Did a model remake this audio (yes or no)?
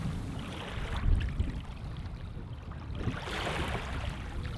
yes